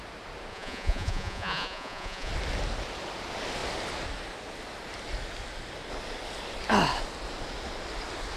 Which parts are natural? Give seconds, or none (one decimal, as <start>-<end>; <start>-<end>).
0.0-0.5; 2.3-8.4